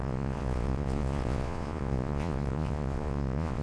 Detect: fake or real fake